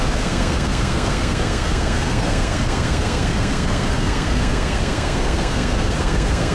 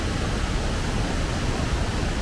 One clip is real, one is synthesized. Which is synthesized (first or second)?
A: first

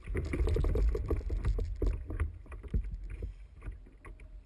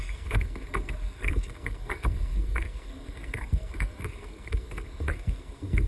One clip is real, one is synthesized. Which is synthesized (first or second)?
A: second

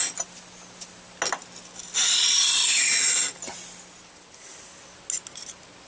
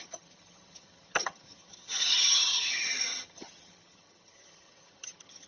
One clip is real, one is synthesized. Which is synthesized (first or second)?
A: second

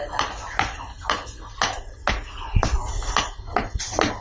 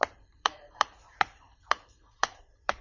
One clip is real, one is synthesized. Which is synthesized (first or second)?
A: second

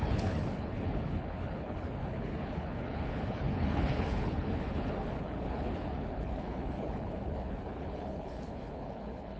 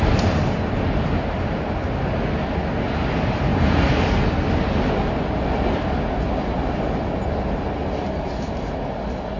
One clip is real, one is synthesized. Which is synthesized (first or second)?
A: first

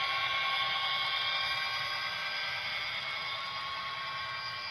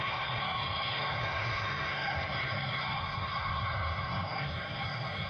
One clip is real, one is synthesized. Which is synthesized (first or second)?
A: second